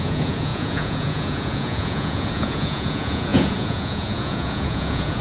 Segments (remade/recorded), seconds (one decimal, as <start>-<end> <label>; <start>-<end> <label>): 0.0-5.2 remade